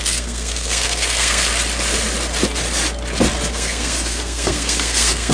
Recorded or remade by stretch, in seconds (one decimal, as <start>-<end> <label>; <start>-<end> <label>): 0.0-1.5 remade; 1.5-3.5 recorded; 3.5-5.3 remade